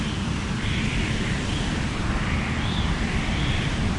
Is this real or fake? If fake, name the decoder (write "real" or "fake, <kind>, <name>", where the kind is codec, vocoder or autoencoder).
fake, vocoder, BigVGAN v2